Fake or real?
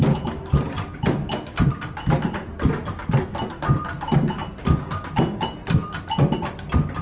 real